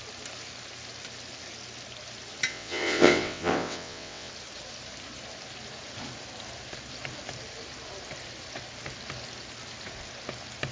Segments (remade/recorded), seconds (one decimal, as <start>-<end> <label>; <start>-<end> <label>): 0.0-2.5 recorded; 2.5-4.3 remade; 4.3-10.7 recorded